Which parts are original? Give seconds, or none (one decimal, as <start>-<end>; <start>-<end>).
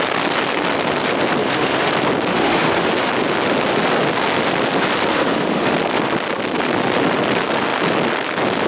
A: 0.0-1.4; 1.9-2.3; 2.9-5.1; 5.7-8.7